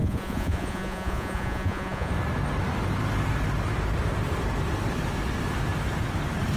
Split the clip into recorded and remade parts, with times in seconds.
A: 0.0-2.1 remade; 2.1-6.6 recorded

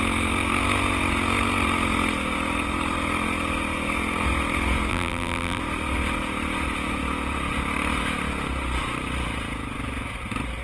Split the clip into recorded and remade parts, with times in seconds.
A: 0.0-4.9 recorded; 4.9-5.6 remade; 5.6-10.6 recorded

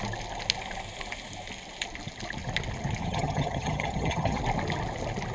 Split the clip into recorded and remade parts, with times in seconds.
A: 0.0-3.0 recorded; 3.0-4.4 remade; 4.4-5.3 recorded

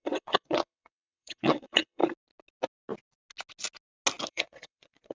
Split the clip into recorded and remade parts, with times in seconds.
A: 0.0-2.0 remade; 2.0-4.3 recorded; 4.3-5.1 remade

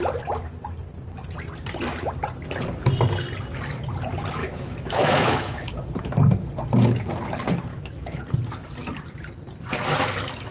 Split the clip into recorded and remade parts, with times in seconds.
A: 0.0-4.4 recorded; 4.4-5.7 remade; 5.7-7.7 recorded; 7.7-8.2 remade; 8.2-10.5 recorded

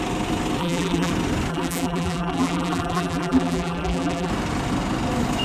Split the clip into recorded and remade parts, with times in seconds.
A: 0.0-0.6 recorded; 0.6-1.1 remade; 1.1-1.5 recorded; 1.5-4.3 remade; 4.3-5.4 recorded

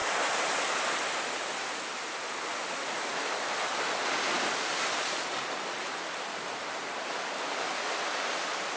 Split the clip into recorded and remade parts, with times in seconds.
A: 0.0-8.8 recorded

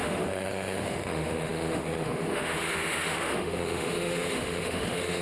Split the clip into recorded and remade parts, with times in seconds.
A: 0.0-5.2 remade